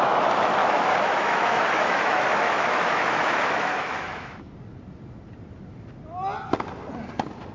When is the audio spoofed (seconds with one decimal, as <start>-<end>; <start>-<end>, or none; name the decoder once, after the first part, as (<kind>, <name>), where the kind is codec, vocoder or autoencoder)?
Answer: 0.6-4.5 (autoencoder, DAC-VAE)